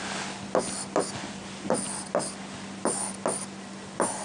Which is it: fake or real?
real